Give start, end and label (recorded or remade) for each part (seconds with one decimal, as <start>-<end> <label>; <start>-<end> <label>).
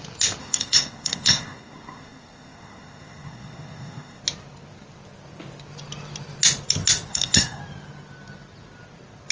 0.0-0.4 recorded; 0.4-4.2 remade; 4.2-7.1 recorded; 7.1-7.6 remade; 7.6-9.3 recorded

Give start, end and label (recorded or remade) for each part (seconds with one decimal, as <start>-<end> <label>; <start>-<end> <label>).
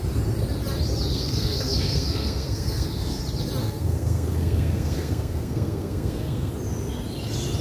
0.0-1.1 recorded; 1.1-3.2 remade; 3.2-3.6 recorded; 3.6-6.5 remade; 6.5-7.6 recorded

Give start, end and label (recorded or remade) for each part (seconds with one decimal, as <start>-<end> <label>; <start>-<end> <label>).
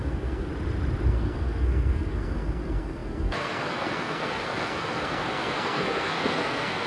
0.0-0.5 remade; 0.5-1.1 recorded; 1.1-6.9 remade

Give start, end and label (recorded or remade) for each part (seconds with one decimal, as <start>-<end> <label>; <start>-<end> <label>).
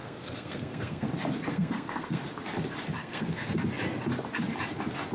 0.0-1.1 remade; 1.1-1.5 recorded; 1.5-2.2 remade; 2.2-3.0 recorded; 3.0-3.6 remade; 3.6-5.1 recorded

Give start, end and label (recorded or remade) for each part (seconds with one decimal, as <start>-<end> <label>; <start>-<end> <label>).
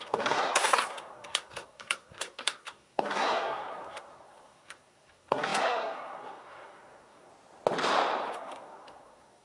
0.0-7.3 remade; 7.3-8.3 recorded; 8.3-9.4 remade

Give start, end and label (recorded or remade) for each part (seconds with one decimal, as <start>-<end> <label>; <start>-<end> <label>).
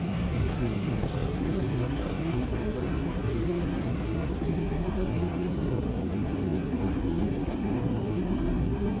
0.0-9.0 remade